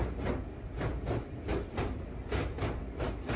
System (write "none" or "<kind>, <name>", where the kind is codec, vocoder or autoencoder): none